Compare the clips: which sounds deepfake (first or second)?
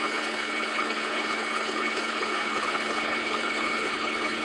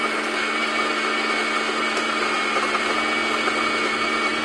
first